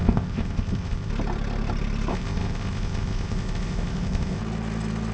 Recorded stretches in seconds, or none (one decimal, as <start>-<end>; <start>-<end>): 1.1-2.1; 4.4-5.1